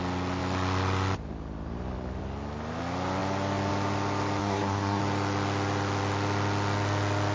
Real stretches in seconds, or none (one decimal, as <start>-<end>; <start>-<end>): 0.0-4.4; 5.0-7.3